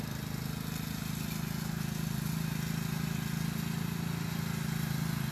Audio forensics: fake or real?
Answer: real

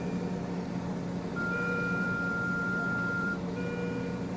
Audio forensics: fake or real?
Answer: fake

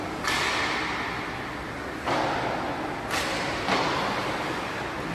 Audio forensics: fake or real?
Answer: real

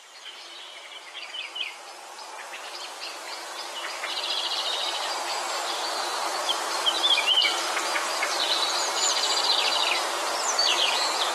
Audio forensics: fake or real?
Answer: fake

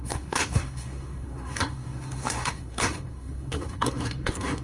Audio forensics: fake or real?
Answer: fake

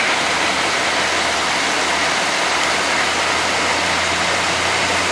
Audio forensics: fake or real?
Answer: real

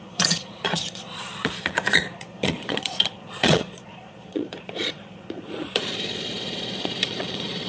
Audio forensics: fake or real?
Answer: fake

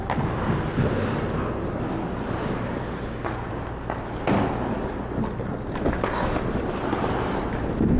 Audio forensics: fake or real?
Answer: real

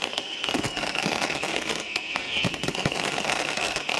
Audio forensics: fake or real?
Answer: fake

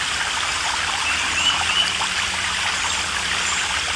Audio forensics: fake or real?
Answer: real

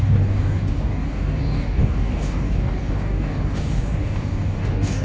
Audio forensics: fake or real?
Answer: fake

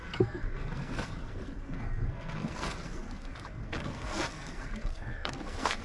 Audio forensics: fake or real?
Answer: fake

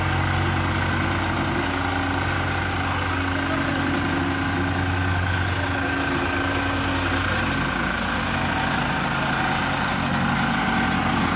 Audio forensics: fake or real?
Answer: real